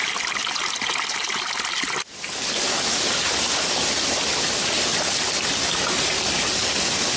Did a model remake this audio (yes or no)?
no